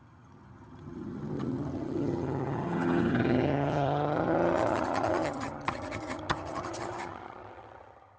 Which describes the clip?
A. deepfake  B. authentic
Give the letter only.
A